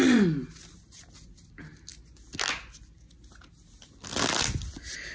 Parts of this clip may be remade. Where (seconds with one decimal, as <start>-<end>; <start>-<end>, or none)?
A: none